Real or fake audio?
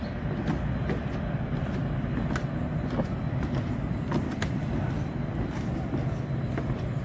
real